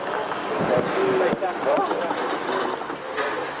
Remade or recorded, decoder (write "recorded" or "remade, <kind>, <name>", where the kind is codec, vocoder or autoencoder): recorded